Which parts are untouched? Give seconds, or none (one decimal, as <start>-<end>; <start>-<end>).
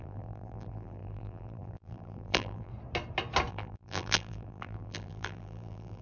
2.7-3.5